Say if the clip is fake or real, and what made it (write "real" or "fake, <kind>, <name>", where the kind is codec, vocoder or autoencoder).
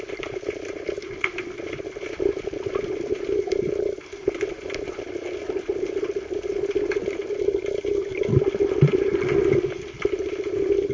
real